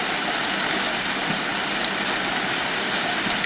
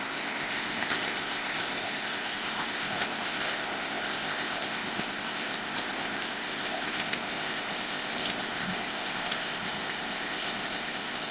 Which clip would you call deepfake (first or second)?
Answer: second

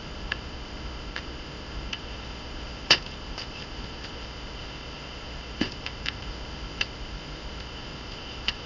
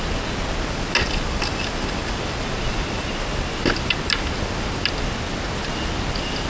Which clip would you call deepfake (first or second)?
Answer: first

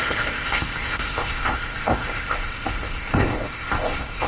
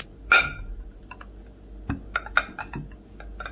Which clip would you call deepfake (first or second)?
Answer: first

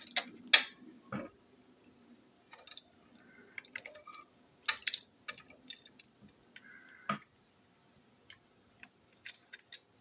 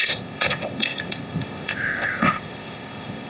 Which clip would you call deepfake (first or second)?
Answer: second